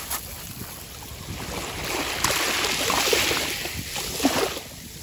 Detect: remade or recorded recorded